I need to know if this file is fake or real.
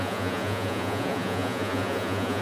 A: fake